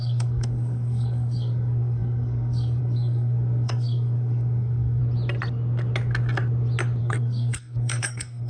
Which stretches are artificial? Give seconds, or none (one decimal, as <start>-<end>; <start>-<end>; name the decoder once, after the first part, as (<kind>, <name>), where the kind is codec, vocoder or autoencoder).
0.0-5.0 (codec, SNAC); 7.0-8.5